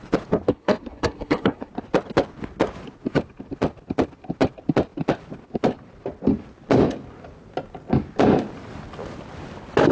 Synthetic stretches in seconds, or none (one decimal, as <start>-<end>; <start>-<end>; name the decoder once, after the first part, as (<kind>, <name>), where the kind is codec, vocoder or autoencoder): 0.5-1.7 (codec, SNAC)